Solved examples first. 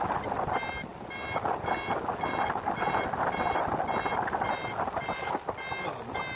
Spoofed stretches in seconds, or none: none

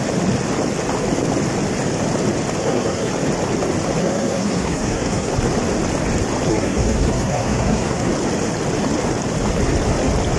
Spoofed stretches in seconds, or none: 2.6-3.1 (codec, SNAC); 4.0-5.3; 6.5-8.1

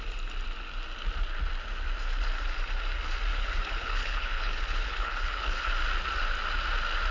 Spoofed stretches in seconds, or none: 3.3-5.7 (codec, HILCodec)

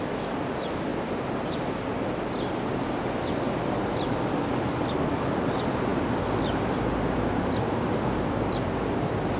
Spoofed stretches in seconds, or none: none

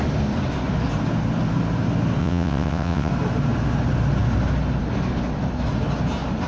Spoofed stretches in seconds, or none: 2.2-3.1 (vocoder, WaveNeXt)

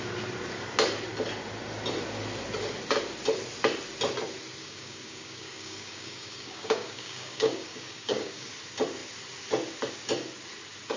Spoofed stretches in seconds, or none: 4.6-8.5 (codec, DAC)

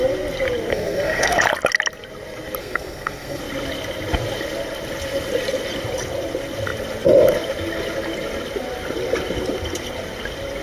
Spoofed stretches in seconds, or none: 0.7-1.4 (codec, SNAC); 2.6-3.4